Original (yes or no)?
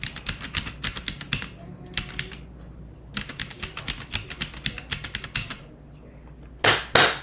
yes